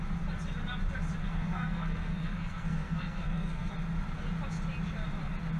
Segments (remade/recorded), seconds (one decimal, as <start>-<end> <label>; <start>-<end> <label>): 0.0-1.2 recorded; 1.2-3.7 remade; 3.7-5.6 recorded